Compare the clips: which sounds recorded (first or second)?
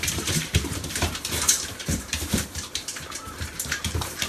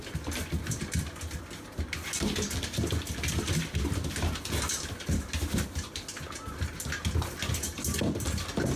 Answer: second